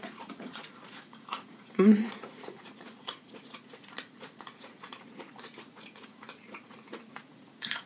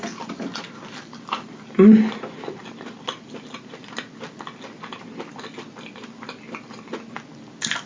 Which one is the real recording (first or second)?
second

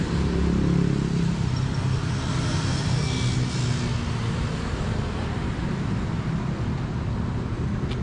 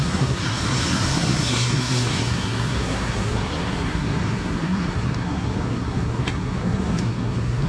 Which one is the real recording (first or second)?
first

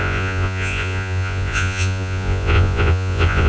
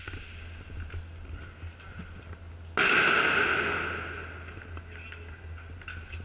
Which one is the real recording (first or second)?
second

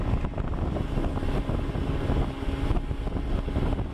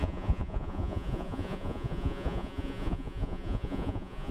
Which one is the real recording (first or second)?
first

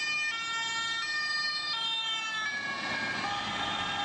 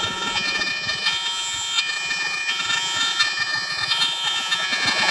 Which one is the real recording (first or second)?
first